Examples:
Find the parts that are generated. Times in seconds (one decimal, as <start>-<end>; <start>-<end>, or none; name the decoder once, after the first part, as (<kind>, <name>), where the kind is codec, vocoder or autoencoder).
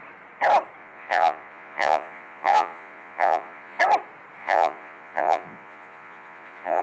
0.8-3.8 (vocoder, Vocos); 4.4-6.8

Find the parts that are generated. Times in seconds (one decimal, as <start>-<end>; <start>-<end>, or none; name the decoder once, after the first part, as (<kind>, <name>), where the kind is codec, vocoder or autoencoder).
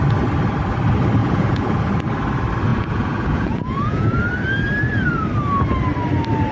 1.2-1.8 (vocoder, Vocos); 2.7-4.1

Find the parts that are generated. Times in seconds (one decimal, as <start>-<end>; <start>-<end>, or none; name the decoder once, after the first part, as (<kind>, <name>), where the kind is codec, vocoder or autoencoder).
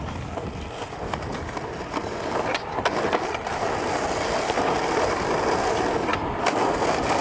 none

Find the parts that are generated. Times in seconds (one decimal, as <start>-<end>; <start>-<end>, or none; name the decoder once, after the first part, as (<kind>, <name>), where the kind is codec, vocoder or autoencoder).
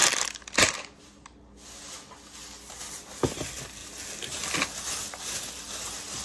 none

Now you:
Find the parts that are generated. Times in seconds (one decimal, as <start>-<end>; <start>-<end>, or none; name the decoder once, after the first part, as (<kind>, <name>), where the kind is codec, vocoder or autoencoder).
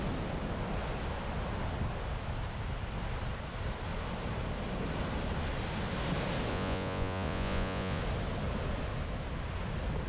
6.5-8.0 (vocoder, Vocos)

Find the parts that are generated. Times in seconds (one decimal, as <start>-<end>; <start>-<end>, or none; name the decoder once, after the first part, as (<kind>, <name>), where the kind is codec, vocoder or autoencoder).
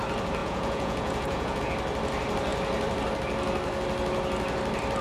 0.4-1.6 (vocoder, Vocos)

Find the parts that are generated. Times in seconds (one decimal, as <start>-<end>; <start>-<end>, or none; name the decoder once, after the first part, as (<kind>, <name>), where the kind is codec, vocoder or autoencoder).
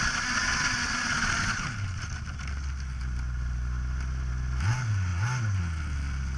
none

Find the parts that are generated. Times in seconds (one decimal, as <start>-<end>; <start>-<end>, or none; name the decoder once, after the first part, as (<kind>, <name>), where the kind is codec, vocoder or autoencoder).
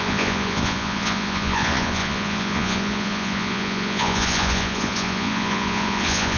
0.0-6.4 (vocoder, Vocos)